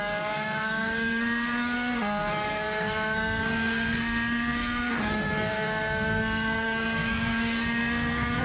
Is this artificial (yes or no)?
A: yes